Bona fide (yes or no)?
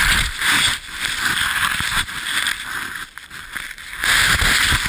yes